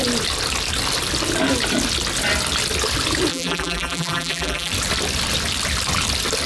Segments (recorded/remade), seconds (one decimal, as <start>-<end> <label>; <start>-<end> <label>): 0.0-3.3 recorded; 3.3-4.7 remade; 4.7-6.5 recorded